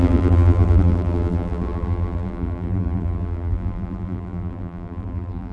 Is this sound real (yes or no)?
no